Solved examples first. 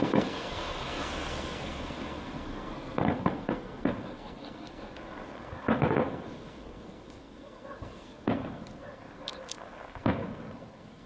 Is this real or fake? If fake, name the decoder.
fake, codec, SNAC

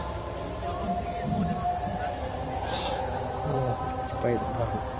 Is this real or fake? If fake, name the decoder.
fake, vocoder, BigVGAN v2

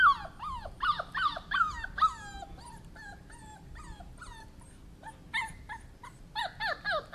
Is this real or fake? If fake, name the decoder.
real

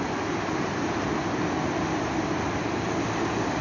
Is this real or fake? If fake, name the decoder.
real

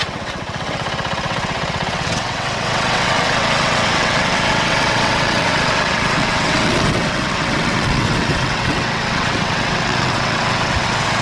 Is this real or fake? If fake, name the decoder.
fake, vocoder, WaveNeXt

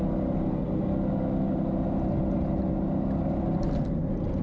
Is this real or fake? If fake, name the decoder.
real